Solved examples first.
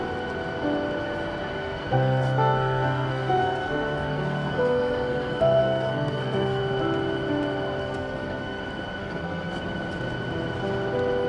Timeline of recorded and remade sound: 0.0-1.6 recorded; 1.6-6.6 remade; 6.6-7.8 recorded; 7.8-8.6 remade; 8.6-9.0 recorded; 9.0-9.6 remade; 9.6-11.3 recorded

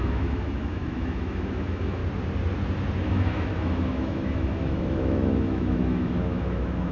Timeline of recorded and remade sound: 0.0-2.0 remade; 2.0-3.0 recorded; 3.0-6.9 remade

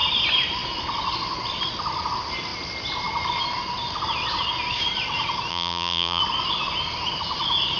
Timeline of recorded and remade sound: 0.0-5.5 recorded; 5.5-6.2 remade; 6.2-7.8 recorded